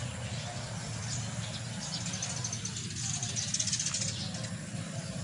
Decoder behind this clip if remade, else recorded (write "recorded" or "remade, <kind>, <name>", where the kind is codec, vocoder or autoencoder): recorded